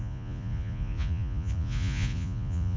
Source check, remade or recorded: remade